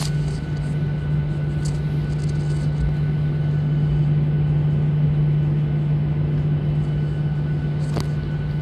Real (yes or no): yes